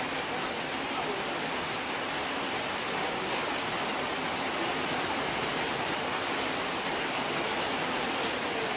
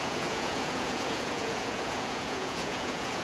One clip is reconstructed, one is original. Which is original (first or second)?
first